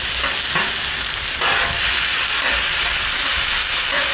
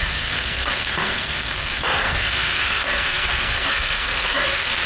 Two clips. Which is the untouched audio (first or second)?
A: first